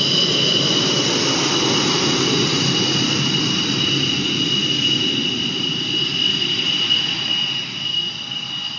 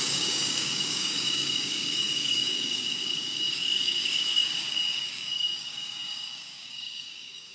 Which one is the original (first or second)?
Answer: first